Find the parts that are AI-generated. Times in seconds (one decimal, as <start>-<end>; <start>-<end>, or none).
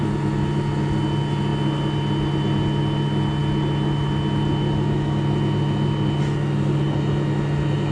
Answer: none